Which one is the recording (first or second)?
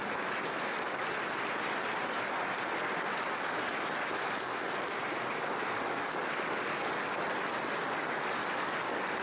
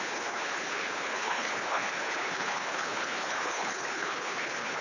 first